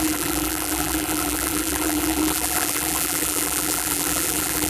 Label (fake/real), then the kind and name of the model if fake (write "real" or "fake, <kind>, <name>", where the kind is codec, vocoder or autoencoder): fake, vocoder, BigVGAN v2